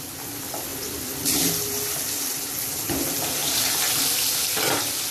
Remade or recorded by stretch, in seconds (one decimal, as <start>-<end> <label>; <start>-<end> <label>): 0.0-0.7 recorded; 0.7-2.4 remade; 2.4-3.4 recorded; 3.4-3.9 remade; 3.9-5.1 recorded